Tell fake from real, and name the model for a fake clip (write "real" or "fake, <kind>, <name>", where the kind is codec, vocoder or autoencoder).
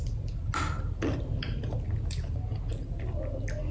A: real